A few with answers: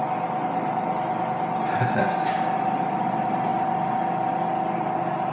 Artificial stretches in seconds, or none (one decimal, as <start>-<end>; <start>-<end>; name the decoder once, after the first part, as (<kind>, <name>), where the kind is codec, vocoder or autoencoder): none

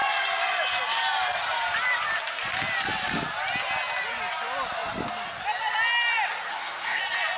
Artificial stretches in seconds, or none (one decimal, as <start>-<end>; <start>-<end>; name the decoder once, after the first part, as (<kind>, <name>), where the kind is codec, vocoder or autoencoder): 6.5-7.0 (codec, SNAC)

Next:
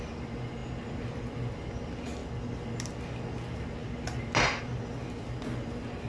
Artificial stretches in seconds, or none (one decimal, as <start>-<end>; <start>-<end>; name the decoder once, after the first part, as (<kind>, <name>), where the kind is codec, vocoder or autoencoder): none

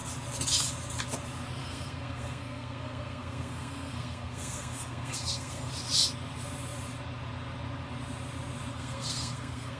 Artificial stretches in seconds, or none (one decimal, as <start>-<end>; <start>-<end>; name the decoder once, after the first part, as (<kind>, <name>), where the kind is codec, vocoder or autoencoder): 1.6-5.7 (codec, SNAC); 8.7-9.8